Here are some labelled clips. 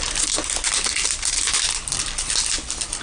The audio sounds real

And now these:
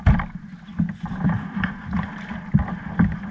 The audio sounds real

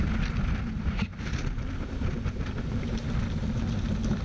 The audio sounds real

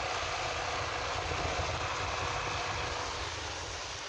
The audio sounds real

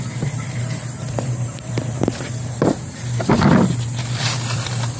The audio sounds fake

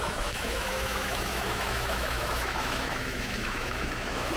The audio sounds fake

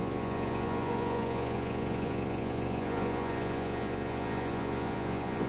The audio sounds fake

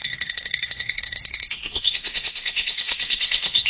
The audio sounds fake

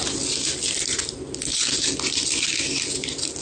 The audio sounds real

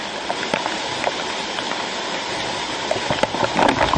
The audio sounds real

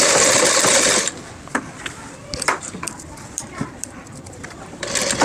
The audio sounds fake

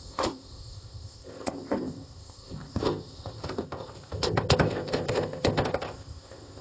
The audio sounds fake